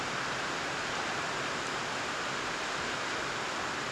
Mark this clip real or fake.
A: real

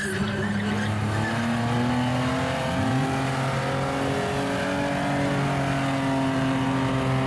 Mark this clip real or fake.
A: real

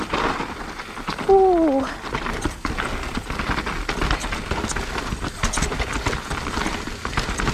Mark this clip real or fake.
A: real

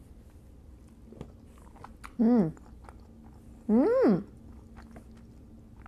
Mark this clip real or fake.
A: real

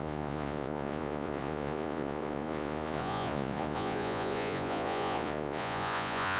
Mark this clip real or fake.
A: fake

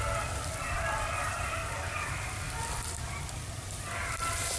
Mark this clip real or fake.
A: real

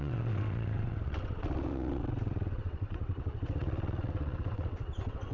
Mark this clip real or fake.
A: fake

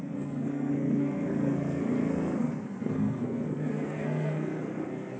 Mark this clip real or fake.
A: fake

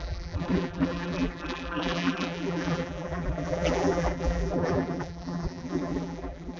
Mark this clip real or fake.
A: fake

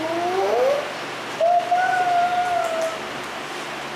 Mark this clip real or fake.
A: real